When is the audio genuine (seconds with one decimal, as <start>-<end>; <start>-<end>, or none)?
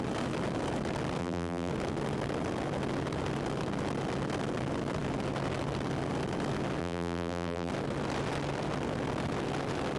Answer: 0.0-1.2; 1.7-6.8; 7.7-10.0